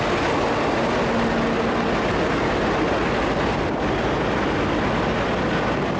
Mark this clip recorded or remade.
recorded